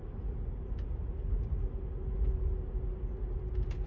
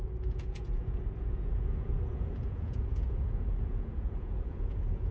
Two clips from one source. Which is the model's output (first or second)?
second